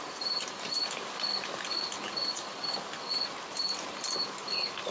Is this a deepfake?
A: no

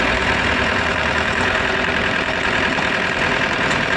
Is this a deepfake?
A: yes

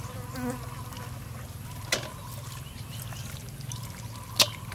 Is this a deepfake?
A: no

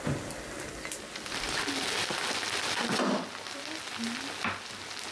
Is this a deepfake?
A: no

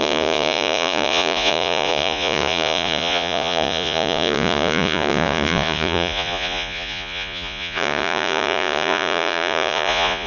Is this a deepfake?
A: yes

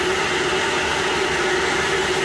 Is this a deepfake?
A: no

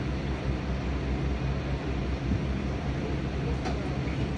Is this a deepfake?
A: no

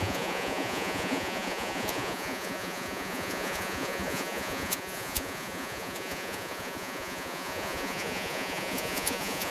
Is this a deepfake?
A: yes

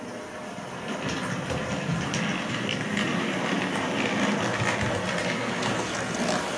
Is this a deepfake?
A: no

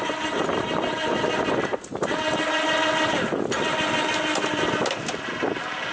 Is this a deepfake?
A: no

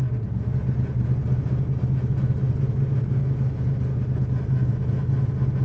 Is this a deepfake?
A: no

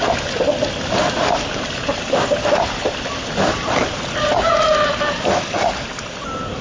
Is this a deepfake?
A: no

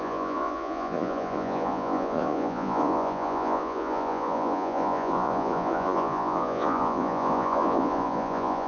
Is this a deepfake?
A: yes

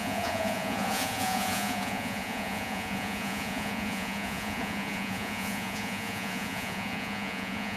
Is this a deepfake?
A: yes